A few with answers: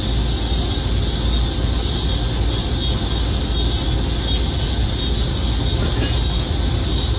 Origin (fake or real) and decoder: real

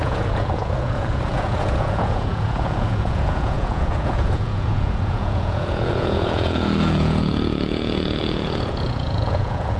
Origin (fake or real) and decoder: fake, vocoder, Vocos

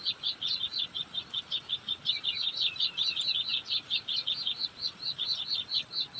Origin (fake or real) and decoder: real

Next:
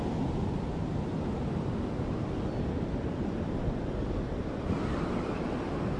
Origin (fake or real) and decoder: real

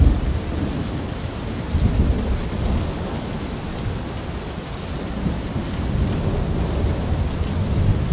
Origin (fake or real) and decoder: real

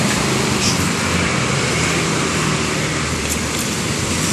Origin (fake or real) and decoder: fake, vocoder, BigVGAN v2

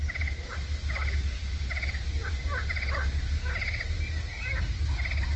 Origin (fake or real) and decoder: real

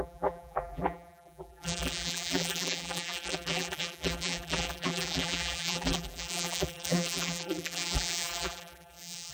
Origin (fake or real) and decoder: fake, vocoder, BigVGAN v2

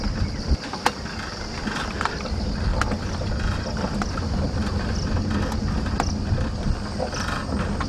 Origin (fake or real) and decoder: real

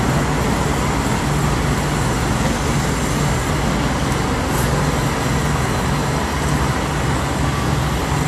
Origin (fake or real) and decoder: real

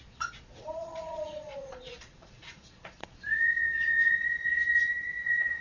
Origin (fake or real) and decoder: fake, vocoder, Vocos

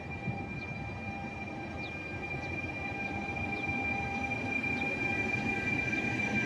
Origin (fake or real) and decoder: real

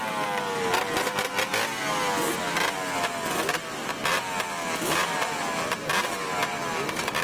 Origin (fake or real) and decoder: real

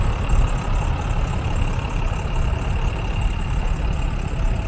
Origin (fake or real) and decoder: fake, vocoder, BigVGAN v2